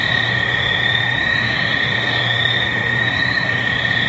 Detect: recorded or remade remade